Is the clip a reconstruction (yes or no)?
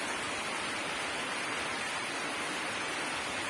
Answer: no